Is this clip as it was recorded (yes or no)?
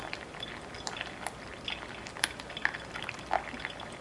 yes